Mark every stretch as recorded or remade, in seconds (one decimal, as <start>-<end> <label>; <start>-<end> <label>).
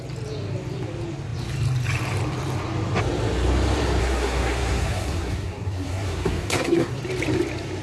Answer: 0.0-4.0 recorded; 4.0-7.0 remade; 7.0-7.8 recorded